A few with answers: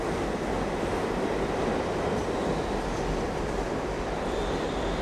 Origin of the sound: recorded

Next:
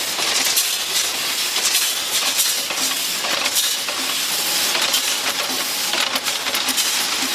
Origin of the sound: recorded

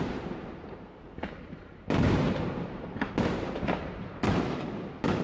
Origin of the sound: remade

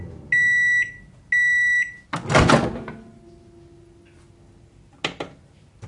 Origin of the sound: recorded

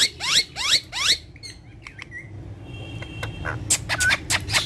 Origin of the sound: recorded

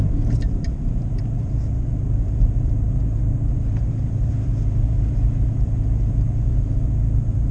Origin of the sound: remade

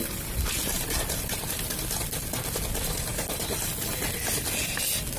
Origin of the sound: recorded